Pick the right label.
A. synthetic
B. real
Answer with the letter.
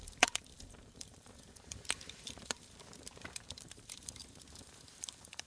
A